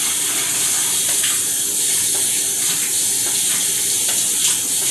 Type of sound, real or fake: real